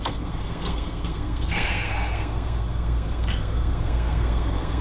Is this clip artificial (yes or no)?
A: yes